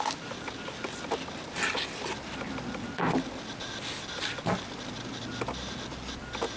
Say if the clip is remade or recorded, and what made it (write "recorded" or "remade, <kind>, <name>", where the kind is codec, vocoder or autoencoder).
recorded